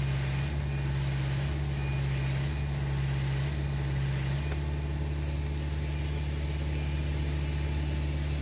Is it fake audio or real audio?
real